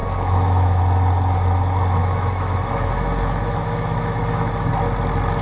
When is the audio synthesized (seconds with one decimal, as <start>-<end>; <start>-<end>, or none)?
0.0-0.8; 2.0-4.7